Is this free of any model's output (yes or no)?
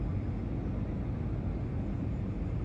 yes